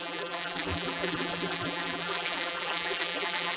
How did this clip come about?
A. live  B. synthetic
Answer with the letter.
B